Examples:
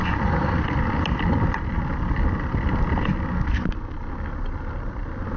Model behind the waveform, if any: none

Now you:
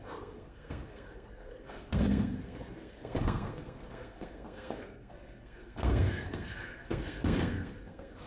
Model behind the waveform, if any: codec, SNAC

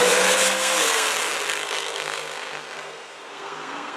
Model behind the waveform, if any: codec, SNAC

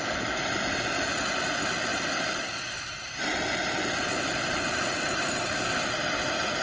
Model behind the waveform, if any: none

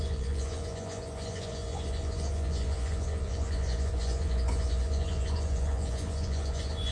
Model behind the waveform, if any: vocoder, Vocos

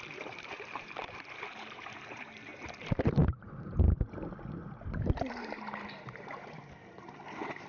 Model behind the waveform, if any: vocoder, BigVGAN v2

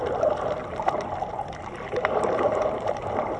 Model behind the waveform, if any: none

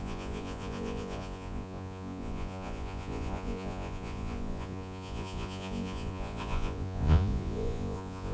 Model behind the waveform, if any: vocoder, Vocos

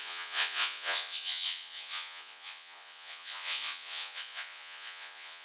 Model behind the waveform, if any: vocoder, Vocos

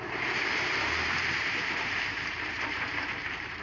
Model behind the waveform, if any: vocoder, BigVGAN v2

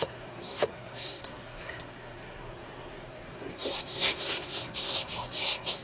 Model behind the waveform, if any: codec, SNAC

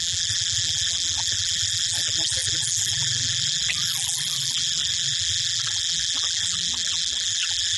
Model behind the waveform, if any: vocoder, BigVGAN v2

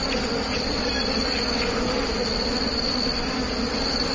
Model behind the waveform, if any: none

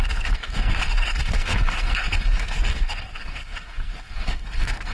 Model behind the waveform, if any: codec, SNAC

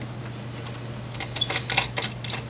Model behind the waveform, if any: none